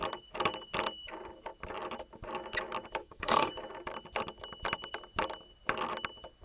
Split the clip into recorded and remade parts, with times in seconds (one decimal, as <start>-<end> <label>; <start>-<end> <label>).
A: 0.0-3.0 recorded; 3.0-3.5 remade; 3.5-6.4 recorded